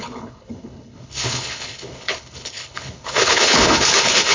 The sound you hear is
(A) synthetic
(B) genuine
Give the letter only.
A